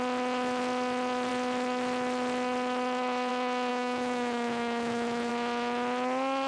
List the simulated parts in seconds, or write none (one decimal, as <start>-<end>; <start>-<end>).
3.7-5.3